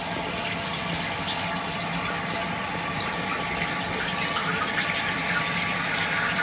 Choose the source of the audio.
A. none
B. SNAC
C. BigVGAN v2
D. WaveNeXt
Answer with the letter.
A